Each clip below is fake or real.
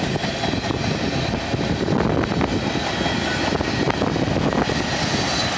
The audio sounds real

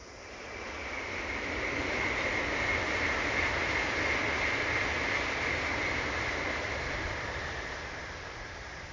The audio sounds real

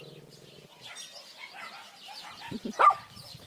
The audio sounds real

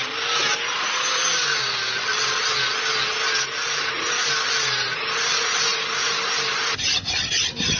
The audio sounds real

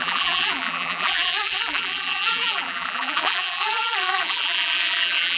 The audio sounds fake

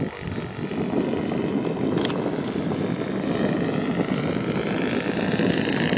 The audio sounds real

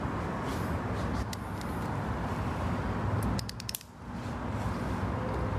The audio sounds real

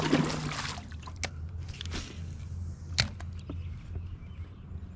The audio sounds real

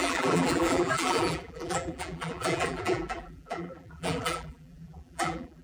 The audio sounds fake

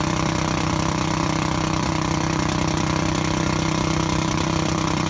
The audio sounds real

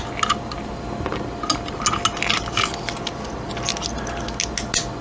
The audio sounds real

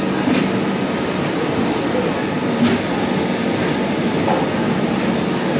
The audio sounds real